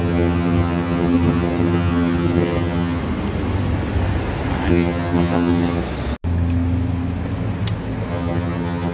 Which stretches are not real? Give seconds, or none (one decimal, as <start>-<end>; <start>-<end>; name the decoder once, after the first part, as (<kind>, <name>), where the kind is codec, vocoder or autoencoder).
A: 0.0-3.0 (vocoder, HiFi-GAN); 4.7-5.8; 8.1-8.9